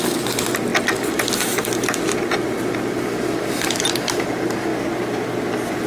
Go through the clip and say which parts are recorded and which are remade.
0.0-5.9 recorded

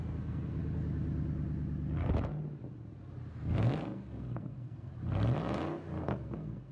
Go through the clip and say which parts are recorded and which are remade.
0.0-0.6 remade; 0.6-3.3 recorded; 3.3-4.9 remade; 4.9-6.0 recorded; 6.0-6.7 remade

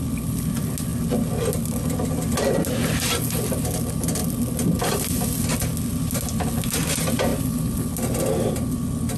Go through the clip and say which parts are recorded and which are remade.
0.0-9.2 recorded